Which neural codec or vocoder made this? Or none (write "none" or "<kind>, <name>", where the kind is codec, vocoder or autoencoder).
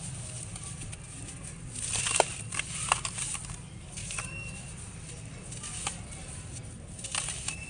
none